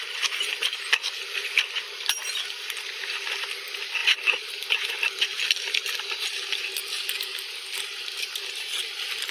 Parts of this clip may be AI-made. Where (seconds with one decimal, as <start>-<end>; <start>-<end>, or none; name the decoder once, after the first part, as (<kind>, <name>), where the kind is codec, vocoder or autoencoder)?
4.0-4.5 (vocoder, BigVGAN v2)